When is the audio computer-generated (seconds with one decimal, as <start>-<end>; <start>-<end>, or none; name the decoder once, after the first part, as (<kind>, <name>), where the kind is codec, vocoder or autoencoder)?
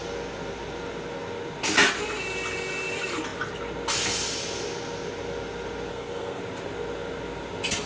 5.9-6.4 (codec, SNAC)